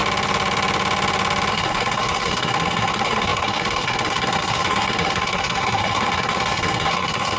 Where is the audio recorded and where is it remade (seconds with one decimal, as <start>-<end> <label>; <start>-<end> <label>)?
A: 0.0-1.5 recorded; 1.5-7.4 remade